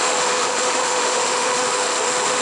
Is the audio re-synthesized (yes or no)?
yes